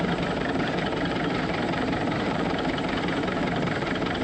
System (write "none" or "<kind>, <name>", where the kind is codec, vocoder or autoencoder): vocoder, BigVGAN v2